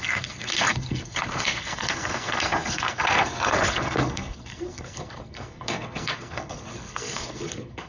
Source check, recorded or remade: remade